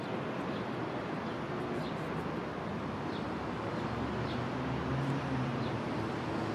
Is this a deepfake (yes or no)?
no